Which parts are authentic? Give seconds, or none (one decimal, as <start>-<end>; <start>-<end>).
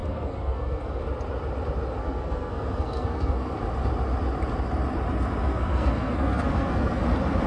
1.0-2.0; 3.5-5.5; 7.0-7.5